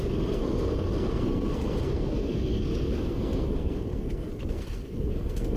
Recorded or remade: remade